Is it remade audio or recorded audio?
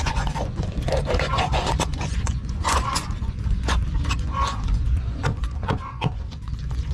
remade